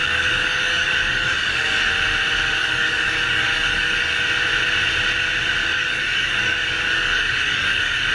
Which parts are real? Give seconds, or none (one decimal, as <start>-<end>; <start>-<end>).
1.9-2.6; 4.2-5.6